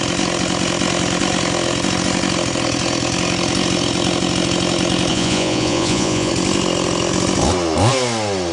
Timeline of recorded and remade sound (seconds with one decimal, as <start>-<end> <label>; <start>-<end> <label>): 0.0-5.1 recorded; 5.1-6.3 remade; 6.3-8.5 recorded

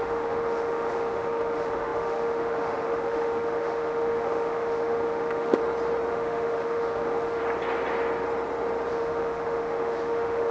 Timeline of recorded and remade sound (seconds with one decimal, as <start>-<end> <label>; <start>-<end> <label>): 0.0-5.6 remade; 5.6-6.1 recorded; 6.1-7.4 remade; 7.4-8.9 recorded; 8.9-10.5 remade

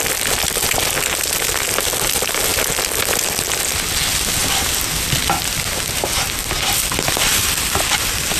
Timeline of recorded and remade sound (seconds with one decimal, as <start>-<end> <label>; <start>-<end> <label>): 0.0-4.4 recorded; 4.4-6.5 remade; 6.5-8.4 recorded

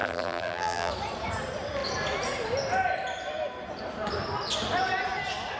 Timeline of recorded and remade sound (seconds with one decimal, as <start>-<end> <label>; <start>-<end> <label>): 0.0-0.9 remade; 0.9-5.6 recorded